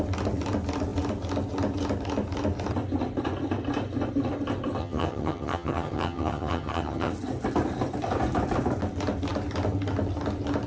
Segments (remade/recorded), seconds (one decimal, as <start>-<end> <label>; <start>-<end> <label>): 0.0-4.8 recorded; 4.8-7.1 remade; 7.1-10.7 recorded